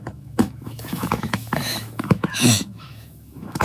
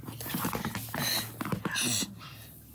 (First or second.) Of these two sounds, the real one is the second